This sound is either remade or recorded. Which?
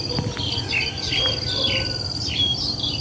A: recorded